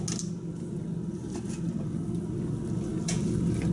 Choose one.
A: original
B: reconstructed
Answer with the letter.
A